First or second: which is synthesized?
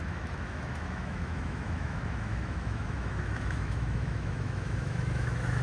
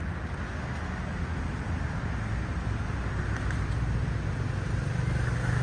first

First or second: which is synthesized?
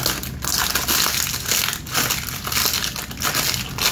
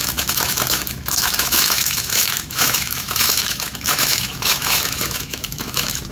second